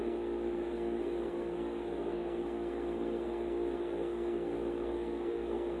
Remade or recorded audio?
remade